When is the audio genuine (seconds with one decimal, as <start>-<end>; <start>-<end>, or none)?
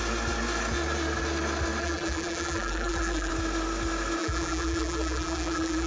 0.0-1.8; 3.3-4.2